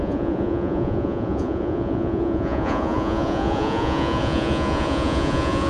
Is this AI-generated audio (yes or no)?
yes